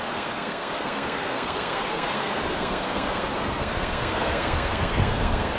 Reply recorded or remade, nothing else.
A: remade